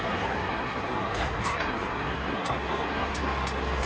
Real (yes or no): no